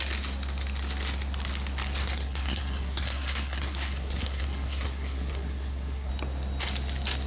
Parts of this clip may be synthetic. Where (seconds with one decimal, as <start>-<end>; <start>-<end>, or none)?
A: 2.0-6.1